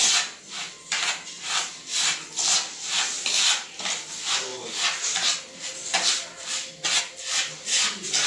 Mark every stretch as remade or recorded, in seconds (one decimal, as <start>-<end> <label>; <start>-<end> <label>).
0.0-8.3 recorded